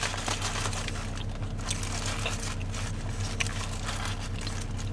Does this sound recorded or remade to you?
recorded